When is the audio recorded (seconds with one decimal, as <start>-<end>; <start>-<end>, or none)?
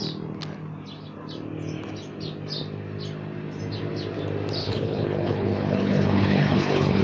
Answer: 0.0-4.6